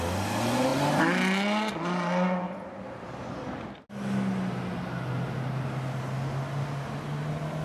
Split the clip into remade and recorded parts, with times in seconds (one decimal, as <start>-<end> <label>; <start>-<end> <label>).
0.0-7.6 recorded